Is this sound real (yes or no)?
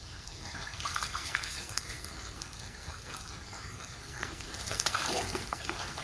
no